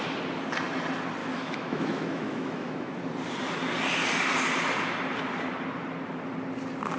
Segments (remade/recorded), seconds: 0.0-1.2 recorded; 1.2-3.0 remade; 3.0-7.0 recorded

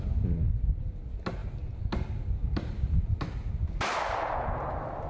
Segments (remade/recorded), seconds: 0.0-5.1 recorded

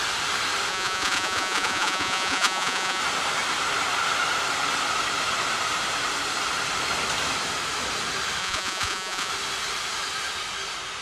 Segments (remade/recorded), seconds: 0.0-0.7 recorded; 0.7-3.0 remade; 3.0-8.4 recorded; 8.4-9.3 remade; 9.3-11.0 recorded

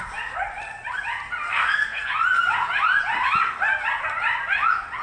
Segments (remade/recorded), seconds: 0.0-1.5 recorded; 1.5-2.1 remade; 2.1-5.0 recorded

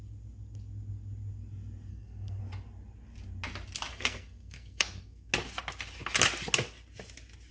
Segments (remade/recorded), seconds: 0.0-1.9 recorded; 1.9-2.4 remade; 2.4-3.9 recorded; 3.9-5.3 remade; 5.3-7.5 recorded

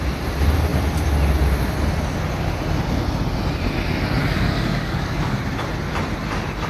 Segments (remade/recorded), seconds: 0.0-4.2 recorded; 4.2-5.4 remade; 5.4-6.7 recorded